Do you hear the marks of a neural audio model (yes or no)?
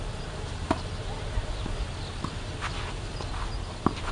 no